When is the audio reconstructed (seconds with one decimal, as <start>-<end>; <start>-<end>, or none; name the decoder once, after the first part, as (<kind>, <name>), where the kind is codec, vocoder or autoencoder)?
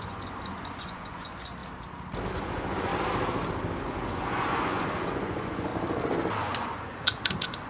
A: 0.0-1.6 (vocoder, Vocos); 2.3-2.9; 3.8-5.7; 6.4-7.7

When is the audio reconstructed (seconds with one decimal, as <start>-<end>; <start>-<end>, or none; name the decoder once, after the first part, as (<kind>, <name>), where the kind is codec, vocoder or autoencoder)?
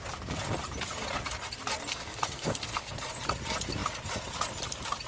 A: 1.9-2.9 (codec, SNAC)